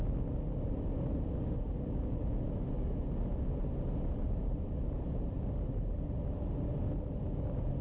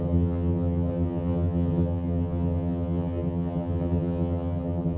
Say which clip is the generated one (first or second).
second